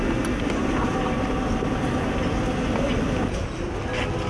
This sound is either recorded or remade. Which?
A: recorded